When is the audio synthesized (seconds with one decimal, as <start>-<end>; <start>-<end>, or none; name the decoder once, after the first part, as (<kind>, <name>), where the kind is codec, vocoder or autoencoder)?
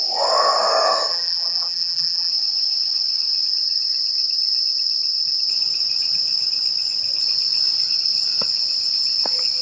1.1-2.3 (vocoder, BigVGAN v2)